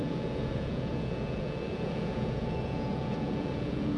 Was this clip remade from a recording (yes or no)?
yes